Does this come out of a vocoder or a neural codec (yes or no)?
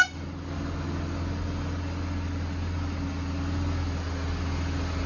no